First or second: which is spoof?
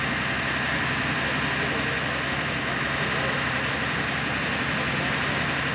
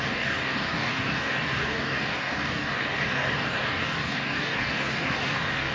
second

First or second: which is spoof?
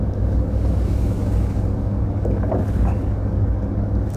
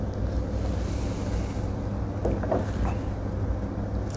first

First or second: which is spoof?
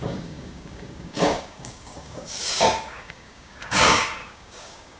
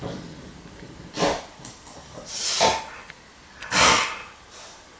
first